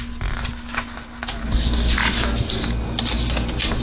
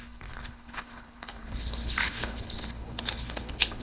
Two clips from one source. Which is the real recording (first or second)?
first